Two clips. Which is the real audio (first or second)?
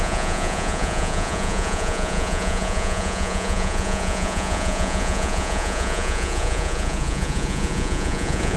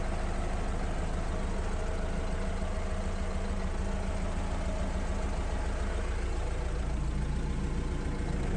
second